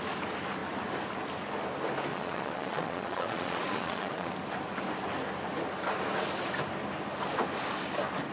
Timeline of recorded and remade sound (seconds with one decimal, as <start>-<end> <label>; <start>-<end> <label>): 0.0-2.1 recorded; 2.1-4.3 remade; 4.3-8.3 recorded